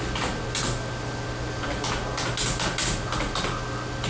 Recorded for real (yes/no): yes